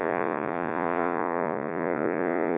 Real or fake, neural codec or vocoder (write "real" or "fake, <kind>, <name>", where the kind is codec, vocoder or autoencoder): fake, vocoder, Vocos